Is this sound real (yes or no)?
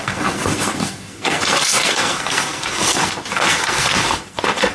no